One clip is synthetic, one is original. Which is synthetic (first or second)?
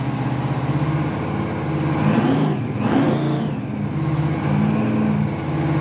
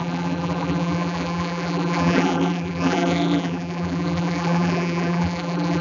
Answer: second